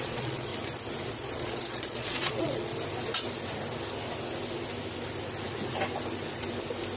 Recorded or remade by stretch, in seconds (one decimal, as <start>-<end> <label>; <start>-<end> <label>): 0.0-0.5 remade; 0.5-1.1 recorded; 1.1-2.7 remade; 2.7-7.0 recorded